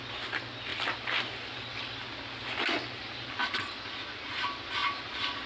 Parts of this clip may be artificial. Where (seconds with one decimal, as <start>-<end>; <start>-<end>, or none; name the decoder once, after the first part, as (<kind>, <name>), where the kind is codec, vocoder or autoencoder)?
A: 0.7-3.6 (vocoder, BigVGAN v2)